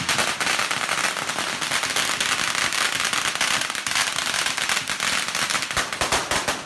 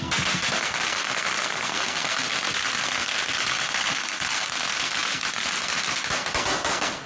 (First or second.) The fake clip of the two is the second